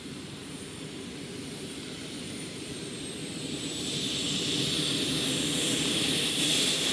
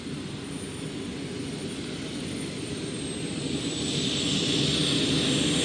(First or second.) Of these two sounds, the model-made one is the first